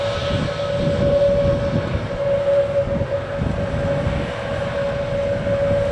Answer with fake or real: real